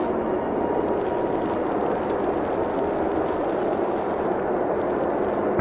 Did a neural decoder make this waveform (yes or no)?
no